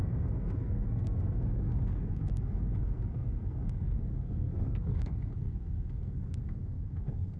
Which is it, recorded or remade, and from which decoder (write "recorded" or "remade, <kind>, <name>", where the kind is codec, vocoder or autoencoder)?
remade, codec, SNAC